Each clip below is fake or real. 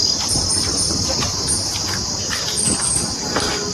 real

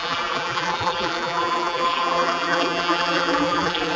fake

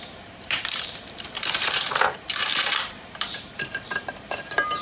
fake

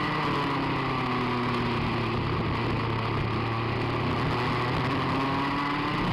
real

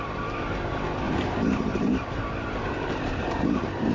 fake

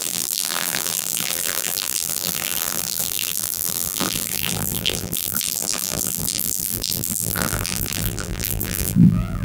fake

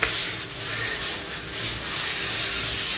real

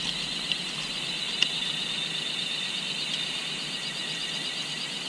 real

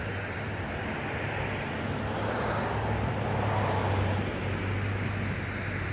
real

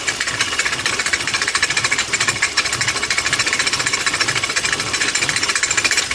fake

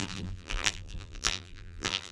fake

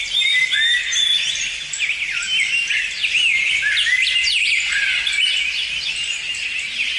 real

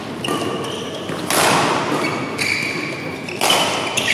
real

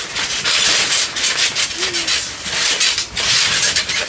real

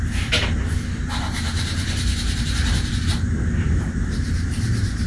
fake